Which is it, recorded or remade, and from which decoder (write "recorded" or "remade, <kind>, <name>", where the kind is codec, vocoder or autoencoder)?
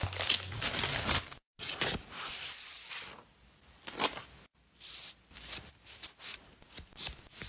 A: recorded